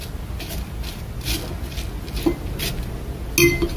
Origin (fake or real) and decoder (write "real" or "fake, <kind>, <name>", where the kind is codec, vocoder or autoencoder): real